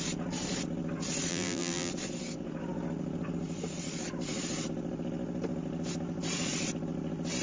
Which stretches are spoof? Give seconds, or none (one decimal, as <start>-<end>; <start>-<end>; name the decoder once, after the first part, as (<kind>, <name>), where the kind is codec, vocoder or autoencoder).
1.3-1.9 (vocoder, BigVGAN v2)